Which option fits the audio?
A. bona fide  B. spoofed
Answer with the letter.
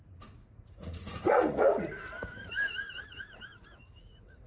B